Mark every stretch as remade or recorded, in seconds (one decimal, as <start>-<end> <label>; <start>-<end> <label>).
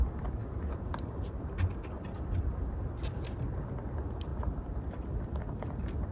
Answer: 0.0-4.3 recorded; 4.3-6.1 remade